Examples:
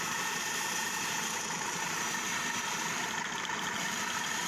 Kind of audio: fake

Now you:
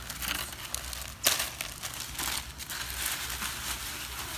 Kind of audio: real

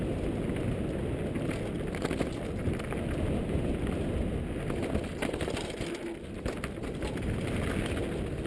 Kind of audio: real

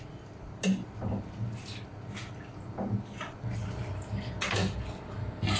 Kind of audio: real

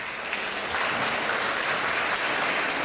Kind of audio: real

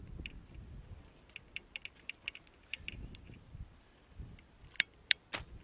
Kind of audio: fake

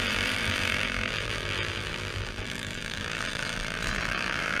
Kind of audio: fake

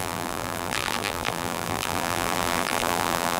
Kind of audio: fake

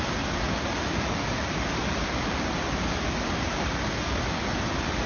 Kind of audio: real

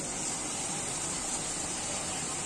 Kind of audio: fake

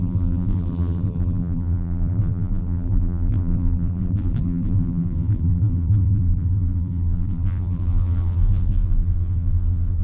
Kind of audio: fake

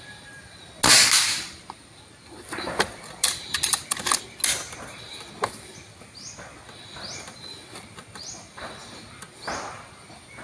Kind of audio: real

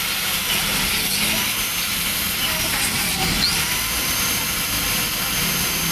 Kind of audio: real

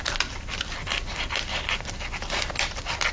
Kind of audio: fake